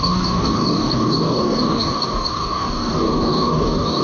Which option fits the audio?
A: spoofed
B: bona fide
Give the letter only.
A